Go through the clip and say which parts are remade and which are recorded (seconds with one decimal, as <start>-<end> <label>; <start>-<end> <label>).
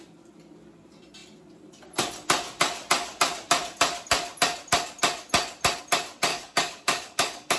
0.0-6.3 recorded; 6.3-7.6 remade